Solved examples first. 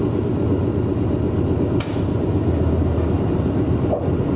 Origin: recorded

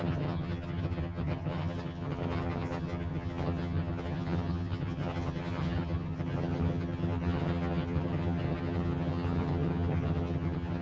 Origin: remade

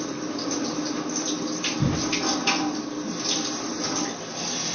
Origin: recorded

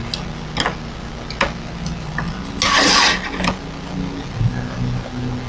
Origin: recorded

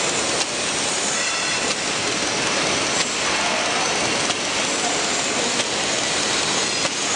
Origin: recorded